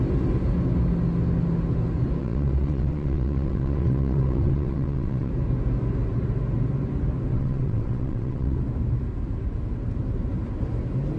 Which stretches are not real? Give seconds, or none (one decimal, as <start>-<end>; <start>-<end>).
2.2-5.3; 7.3-8.6